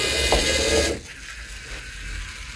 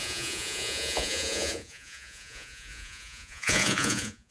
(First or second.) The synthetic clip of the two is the second